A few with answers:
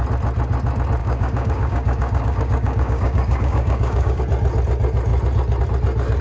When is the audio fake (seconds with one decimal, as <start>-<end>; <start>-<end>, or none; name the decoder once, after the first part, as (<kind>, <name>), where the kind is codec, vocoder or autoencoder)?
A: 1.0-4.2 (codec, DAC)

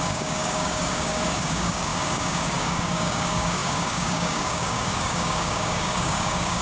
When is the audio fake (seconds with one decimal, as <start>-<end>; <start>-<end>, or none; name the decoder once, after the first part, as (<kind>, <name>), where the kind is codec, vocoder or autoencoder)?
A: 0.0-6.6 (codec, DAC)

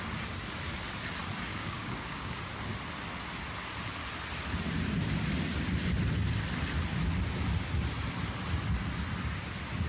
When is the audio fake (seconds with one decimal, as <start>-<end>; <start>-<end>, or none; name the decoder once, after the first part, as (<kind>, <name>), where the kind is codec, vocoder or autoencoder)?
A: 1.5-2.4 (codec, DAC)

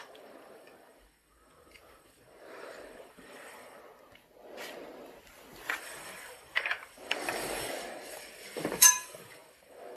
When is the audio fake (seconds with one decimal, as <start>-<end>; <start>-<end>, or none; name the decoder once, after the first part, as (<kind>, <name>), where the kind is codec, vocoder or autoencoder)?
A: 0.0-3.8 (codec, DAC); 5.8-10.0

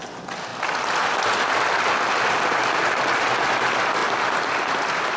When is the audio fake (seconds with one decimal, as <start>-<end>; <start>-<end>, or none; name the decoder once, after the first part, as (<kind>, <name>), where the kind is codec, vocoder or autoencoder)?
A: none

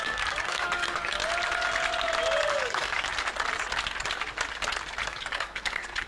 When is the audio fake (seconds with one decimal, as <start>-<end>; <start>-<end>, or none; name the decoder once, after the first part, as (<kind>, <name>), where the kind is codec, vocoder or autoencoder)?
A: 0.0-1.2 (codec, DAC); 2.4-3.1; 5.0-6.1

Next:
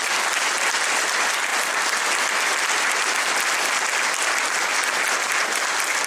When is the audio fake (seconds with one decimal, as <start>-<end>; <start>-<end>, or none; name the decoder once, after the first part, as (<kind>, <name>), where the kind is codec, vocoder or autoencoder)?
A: none